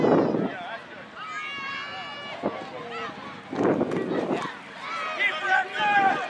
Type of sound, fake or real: real